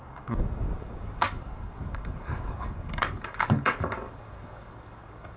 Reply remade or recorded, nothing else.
remade